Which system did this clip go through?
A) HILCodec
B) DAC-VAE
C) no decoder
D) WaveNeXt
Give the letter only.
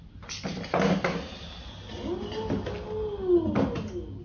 C